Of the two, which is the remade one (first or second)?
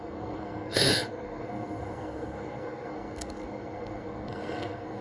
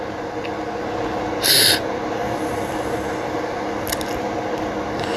first